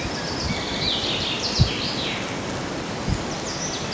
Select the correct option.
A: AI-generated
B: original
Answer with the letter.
B